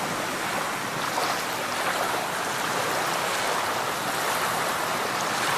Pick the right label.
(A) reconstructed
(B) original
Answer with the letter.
B